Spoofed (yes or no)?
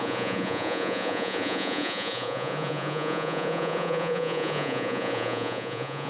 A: yes